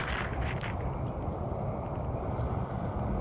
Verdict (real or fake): real